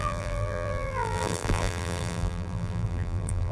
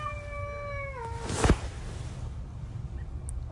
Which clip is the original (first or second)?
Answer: second